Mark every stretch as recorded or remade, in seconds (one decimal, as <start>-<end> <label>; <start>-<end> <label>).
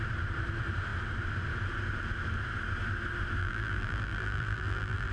0.0-3.4 recorded; 3.4-5.1 remade